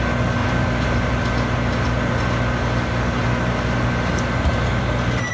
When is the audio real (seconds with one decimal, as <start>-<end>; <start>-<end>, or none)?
0.0-0.4; 1.1-5.3